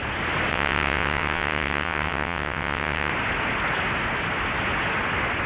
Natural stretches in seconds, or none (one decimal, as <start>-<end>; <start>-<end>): 0.0-0.5; 3.1-5.5